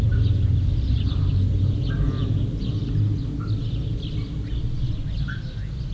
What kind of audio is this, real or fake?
real